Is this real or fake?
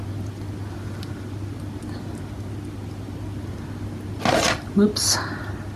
real